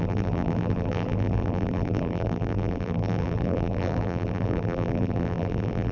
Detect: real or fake fake